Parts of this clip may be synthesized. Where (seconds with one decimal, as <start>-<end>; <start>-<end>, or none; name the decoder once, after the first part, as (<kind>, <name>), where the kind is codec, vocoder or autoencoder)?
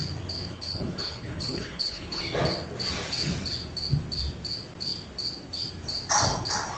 0.5-2.2 (codec, HILCodec)